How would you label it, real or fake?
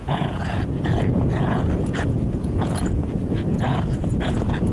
fake